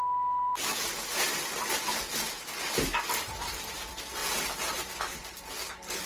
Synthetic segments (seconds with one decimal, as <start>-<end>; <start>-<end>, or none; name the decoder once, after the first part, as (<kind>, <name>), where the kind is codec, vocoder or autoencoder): 4.2-5.1 (vocoder, BigVGAN v2)